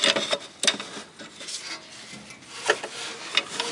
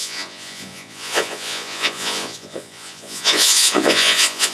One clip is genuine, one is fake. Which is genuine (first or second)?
first